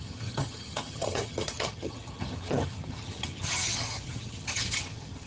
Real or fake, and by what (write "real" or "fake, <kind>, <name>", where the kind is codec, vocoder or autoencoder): fake, vocoder, HiFi-GAN